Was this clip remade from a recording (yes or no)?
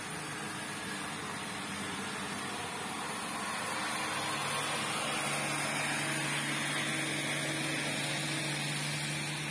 no